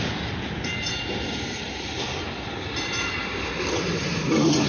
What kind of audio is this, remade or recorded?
recorded